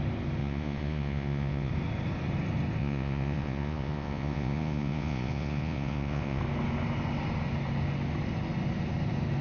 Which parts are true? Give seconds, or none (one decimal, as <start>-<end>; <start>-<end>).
0.0-0.4; 1.7-2.8; 6.4-9.4